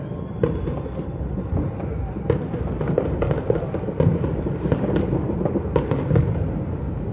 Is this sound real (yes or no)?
yes